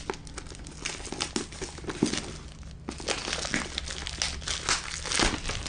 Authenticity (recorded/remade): recorded